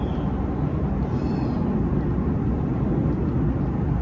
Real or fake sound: real